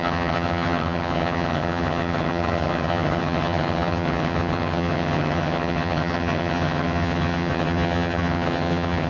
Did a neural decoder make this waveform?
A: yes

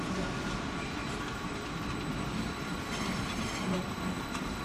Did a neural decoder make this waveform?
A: no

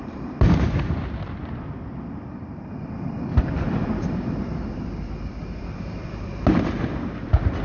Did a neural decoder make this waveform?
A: yes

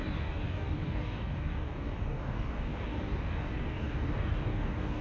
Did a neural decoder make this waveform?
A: yes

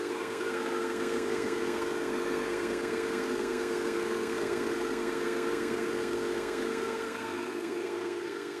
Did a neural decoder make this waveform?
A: yes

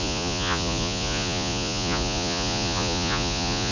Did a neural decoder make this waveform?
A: yes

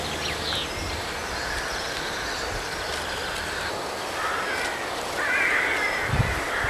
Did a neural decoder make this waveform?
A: no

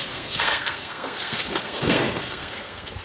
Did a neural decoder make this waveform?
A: yes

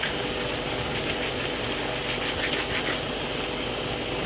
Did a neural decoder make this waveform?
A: no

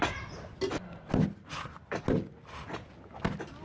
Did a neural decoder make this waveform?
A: no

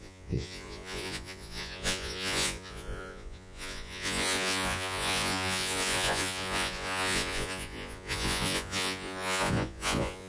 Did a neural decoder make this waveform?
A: yes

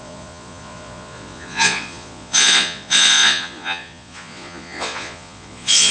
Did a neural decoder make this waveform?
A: yes